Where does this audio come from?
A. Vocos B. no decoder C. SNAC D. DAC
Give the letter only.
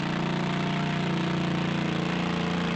B